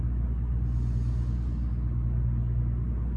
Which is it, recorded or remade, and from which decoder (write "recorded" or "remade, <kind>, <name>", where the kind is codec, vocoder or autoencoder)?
recorded